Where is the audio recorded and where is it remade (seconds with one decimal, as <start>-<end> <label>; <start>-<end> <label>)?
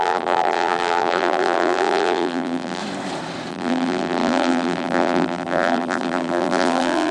0.0-2.8 remade; 2.8-3.5 recorded; 3.5-7.1 remade